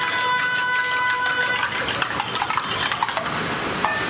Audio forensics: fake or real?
real